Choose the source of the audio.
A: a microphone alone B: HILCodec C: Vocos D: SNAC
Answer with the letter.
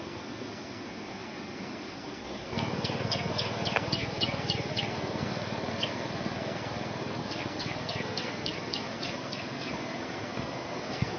D